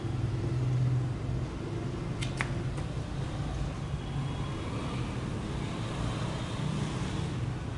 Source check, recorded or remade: recorded